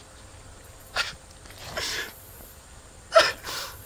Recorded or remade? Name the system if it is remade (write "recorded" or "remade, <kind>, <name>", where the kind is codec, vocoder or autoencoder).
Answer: recorded